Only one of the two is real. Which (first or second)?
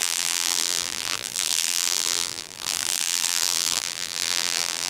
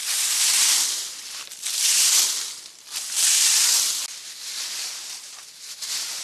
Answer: second